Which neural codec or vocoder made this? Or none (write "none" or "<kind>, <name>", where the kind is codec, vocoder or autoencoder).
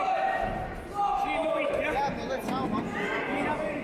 none